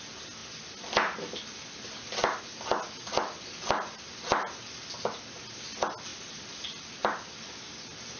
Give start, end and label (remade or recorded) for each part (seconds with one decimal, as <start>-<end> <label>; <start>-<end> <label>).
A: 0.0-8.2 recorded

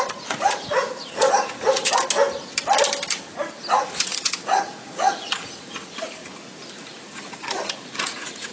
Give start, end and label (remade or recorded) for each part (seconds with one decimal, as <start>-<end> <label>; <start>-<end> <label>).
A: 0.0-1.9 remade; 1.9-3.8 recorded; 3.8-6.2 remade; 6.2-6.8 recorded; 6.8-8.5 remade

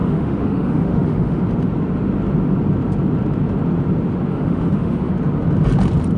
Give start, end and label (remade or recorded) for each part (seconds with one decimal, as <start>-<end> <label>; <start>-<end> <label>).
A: 0.0-1.4 remade; 1.4-4.3 recorded; 4.3-5.1 remade; 5.1-6.2 recorded